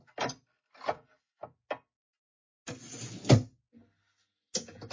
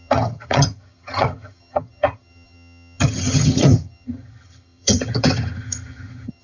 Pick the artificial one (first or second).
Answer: second